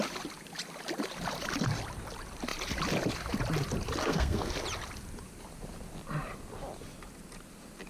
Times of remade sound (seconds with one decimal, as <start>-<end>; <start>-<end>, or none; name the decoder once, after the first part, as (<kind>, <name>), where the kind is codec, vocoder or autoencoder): 4.0-4.5 (codec, SNAC)